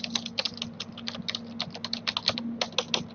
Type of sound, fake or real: real